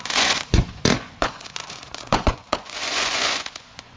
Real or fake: fake